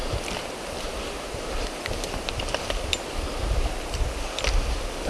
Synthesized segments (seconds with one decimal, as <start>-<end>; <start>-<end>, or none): none